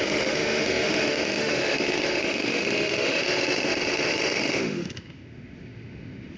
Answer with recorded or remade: remade